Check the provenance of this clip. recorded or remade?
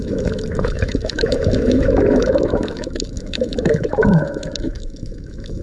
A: remade